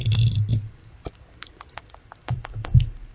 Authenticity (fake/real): real